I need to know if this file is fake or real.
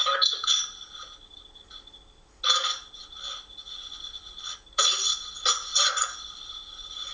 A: real